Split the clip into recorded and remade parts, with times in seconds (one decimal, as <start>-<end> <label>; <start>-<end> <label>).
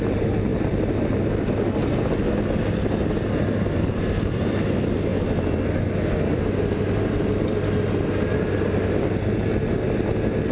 0.0-10.5 recorded